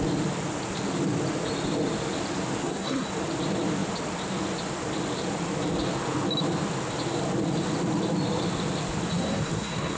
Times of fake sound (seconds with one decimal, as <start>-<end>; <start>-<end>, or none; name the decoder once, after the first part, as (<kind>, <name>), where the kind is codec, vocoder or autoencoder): 2.6-3.1 (codec, SNAC); 9.1-10.0